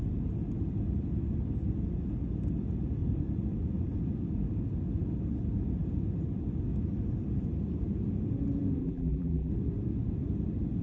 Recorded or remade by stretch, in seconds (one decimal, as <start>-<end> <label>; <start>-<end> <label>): 0.0-8.8 recorded; 8.8-9.5 remade; 9.5-10.8 recorded